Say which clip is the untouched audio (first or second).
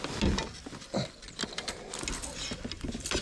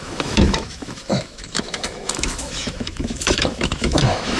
first